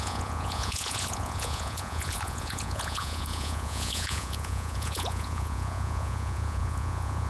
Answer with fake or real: fake